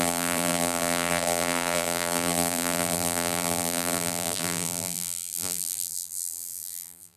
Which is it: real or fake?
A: fake